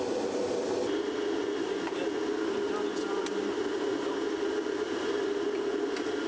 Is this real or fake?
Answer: real